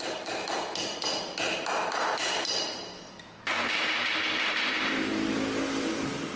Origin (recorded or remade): recorded